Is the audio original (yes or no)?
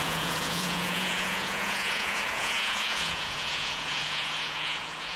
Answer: no